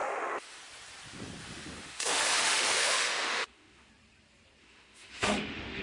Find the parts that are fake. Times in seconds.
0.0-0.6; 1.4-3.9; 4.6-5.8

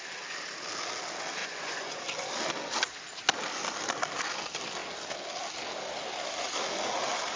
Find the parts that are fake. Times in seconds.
1.4-2.0

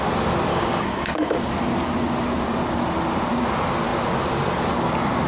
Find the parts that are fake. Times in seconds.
0.5-1.5